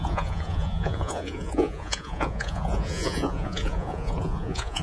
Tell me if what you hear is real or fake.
fake